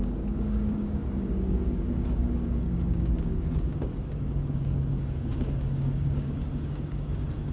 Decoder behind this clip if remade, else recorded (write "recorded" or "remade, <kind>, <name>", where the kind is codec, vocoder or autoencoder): remade, codec, DAC